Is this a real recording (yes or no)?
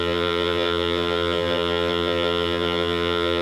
no